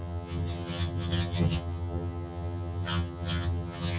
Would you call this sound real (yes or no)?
no